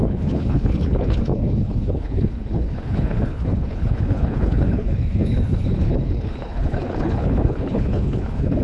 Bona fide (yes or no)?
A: no